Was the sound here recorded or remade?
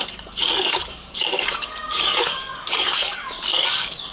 remade